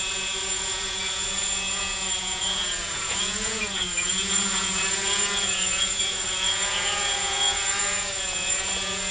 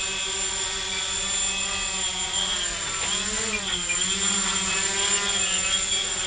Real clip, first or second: second